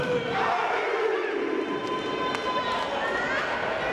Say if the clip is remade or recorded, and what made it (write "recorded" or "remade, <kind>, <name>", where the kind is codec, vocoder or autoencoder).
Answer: recorded